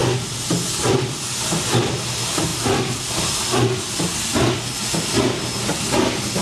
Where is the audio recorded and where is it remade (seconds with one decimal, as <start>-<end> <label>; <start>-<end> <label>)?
0.0-6.4 recorded